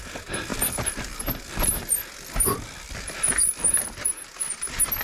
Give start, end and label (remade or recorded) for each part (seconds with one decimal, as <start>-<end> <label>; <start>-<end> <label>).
0.0-4.1 remade; 4.1-5.0 recorded

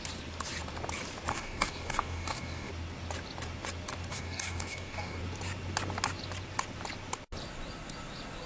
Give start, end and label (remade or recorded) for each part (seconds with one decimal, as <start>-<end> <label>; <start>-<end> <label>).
0.0-1.3 recorded; 1.3-2.7 remade; 2.7-4.1 recorded; 4.1-5.2 remade; 5.2-8.5 recorded

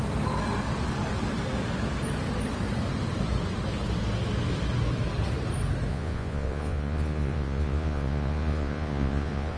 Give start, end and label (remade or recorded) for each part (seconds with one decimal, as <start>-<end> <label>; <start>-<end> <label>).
0.0-5.9 recorded; 5.9-9.6 remade

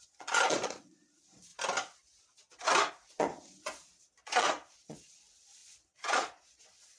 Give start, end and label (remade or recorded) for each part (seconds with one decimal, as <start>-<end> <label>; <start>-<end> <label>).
0.0-1.5 remade; 1.5-3.1 recorded; 3.1-7.0 remade

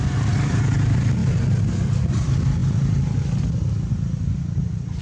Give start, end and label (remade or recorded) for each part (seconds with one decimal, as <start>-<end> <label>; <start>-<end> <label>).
0.0-2.6 remade; 2.6-3.9 recorded; 3.9-5.0 remade